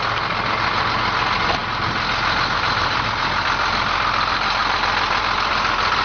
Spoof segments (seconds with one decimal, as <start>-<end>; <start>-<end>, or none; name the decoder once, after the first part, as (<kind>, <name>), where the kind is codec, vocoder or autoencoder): none